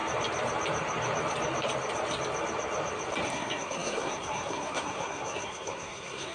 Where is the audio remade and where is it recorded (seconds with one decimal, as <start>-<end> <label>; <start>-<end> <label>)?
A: 0.0-3.3 recorded; 3.3-6.3 remade